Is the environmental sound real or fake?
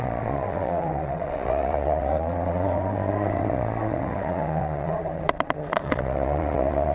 fake